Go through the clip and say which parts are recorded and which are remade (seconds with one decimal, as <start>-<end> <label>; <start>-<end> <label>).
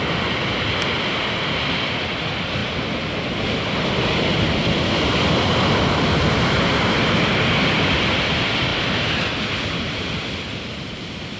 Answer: 0.0-11.4 recorded